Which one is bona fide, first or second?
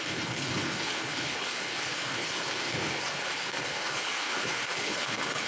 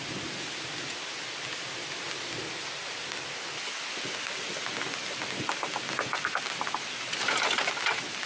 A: second